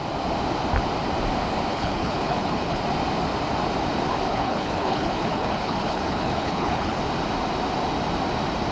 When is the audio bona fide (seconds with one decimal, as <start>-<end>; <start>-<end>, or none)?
0.0-1.7; 2.8-4.3; 7.0-8.7